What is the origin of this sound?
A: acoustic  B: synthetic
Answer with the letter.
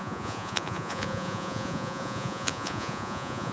B